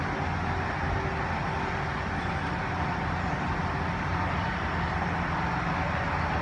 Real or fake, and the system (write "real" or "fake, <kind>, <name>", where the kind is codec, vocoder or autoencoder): real